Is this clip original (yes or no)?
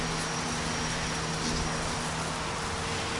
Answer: yes